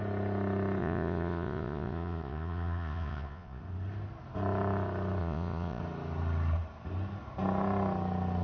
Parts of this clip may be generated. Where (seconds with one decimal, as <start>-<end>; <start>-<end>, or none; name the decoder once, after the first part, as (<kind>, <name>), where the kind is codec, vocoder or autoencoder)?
0.8-3.6 (vocoder, Vocos); 5.2-5.8